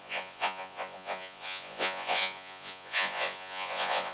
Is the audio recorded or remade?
remade